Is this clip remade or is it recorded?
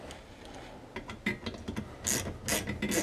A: recorded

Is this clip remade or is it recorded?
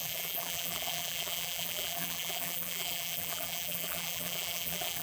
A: remade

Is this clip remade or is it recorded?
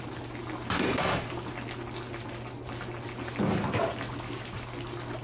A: recorded